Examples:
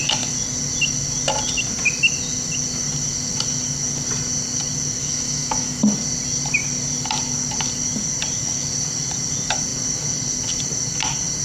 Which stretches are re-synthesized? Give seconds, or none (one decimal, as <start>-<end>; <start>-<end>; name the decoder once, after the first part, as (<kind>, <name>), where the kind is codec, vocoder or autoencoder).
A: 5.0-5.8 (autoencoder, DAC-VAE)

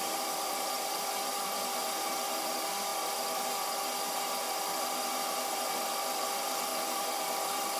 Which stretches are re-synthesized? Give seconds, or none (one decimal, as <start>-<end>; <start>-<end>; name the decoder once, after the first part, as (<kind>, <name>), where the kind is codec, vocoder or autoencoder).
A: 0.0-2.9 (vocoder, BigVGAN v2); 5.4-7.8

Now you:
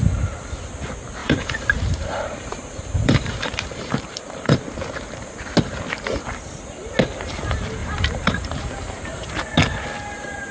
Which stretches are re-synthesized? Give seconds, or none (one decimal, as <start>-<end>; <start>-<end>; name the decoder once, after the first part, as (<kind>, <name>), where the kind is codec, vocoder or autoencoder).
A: 1.2-4.6 (vocoder, BigVGAN v2); 7.8-9.3

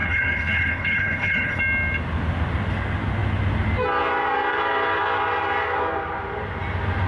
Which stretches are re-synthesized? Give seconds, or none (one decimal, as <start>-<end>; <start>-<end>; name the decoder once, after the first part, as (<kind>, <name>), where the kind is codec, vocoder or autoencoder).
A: 0.0-1.6 (codec, HILCodec)